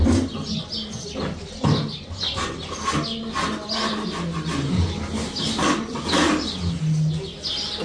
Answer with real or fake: real